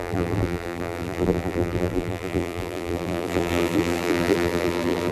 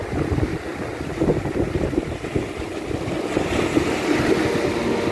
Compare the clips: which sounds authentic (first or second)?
second